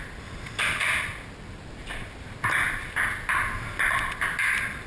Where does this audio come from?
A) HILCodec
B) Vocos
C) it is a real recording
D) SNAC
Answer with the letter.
C